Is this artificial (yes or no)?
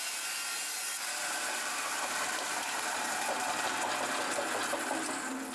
no